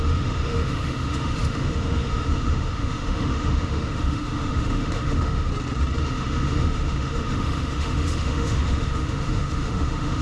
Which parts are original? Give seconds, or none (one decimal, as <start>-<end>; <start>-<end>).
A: 5.5-6.0